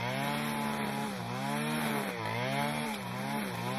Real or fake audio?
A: real